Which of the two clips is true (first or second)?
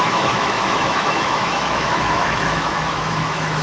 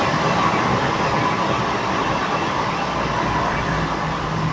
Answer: second